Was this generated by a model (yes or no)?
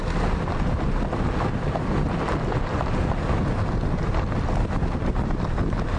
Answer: no